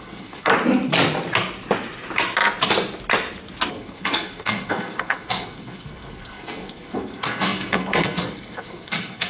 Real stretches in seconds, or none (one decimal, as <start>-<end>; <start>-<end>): 0.5-3.7